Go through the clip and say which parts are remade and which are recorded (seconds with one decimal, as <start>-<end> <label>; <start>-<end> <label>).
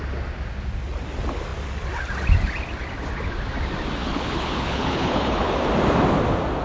0.0-4.0 recorded; 4.0-5.5 remade; 5.5-6.6 recorded